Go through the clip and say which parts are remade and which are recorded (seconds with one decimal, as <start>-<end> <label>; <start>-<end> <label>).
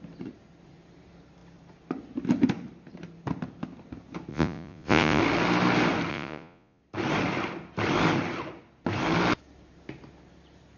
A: 0.0-4.3 recorded; 4.3-5.2 remade; 5.2-6.1 recorded; 6.1-6.8 remade; 6.8-10.8 recorded